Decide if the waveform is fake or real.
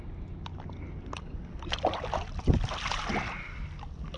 real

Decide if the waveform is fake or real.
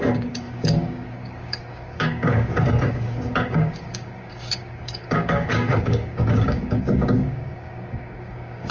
fake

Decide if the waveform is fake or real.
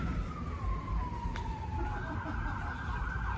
real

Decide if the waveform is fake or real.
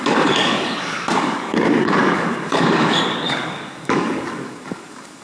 fake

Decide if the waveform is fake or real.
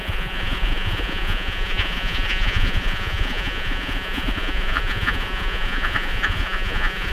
fake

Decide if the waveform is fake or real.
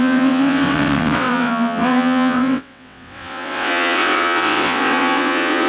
fake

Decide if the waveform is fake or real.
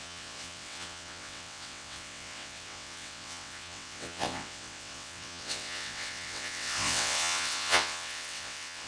fake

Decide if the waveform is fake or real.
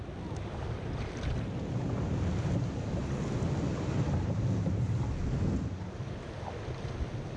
real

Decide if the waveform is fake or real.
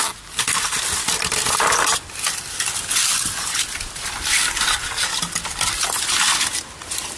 real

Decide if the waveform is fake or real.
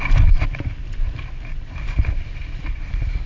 real